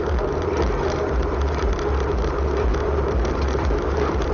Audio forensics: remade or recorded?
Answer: remade